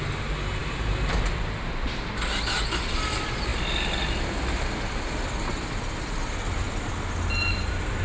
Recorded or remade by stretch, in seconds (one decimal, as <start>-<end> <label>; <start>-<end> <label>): 0.0-0.6 recorded; 0.6-1.5 remade; 1.5-8.0 recorded